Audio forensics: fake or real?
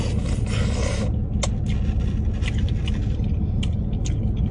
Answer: real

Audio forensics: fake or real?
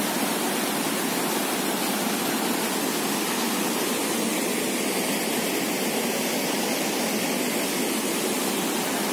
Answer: real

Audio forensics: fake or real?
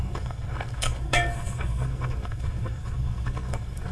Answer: fake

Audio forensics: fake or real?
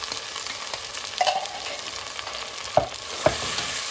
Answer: real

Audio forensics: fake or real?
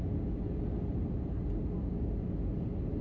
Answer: real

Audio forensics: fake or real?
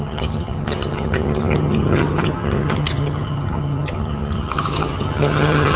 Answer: fake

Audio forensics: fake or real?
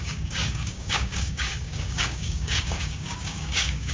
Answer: fake